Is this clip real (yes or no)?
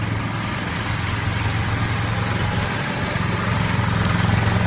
yes